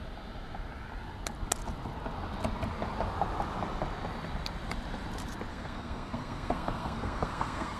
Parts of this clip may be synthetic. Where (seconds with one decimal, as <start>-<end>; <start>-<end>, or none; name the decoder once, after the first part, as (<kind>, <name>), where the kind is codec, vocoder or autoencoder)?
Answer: 5.5-7.8 (codec, SNAC)